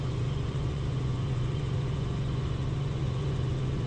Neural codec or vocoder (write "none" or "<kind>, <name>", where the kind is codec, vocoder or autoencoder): vocoder, Vocos